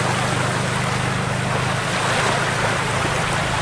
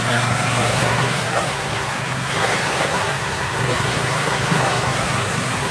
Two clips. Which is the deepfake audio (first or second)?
second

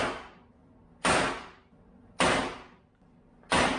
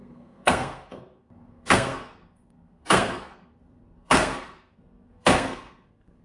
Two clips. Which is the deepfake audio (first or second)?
second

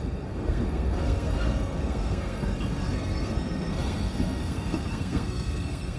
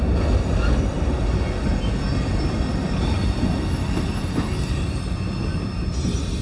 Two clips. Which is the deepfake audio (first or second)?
first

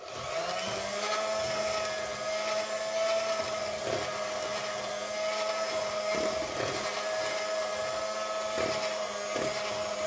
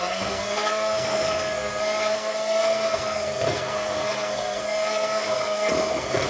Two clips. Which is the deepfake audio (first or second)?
second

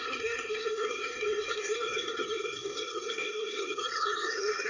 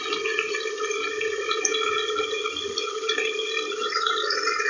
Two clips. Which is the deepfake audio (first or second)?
first